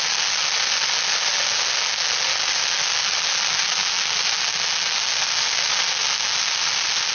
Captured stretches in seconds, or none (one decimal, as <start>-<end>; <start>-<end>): 0.0-7.1